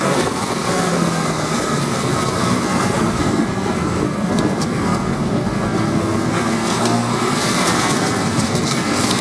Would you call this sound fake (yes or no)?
yes